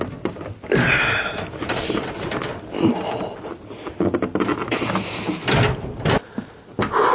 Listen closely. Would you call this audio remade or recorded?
recorded